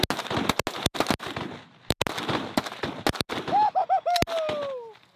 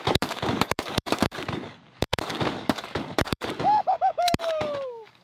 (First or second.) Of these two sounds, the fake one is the second